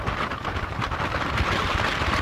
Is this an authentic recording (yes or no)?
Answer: yes